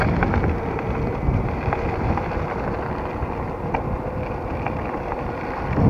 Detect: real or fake real